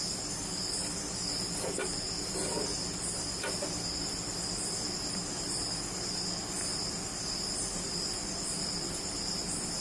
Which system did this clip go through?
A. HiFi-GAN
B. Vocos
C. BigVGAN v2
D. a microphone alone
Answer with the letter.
D